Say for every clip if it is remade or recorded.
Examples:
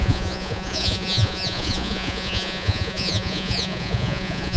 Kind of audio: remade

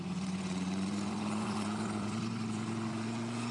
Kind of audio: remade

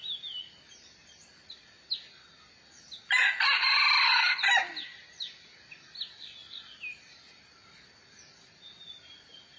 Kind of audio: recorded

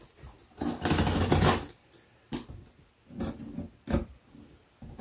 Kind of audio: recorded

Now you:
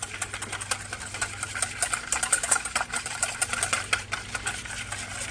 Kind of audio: recorded